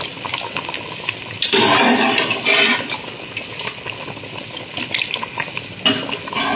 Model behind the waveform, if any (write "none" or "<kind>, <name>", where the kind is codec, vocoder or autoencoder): none